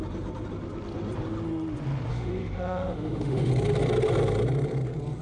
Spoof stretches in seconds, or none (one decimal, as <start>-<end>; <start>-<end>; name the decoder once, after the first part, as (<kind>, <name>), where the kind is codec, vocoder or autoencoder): 2.1-3.5 (autoencoder, DAC-VAE)